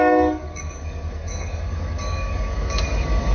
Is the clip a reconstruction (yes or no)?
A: yes